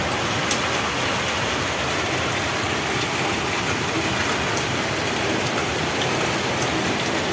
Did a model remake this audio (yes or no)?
no